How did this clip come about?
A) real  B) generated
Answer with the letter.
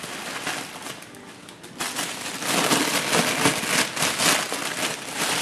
A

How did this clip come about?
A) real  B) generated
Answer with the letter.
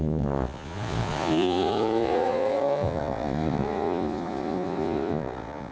B